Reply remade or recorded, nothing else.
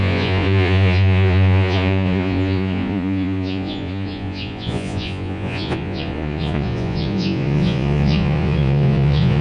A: remade